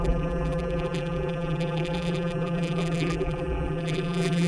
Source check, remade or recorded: remade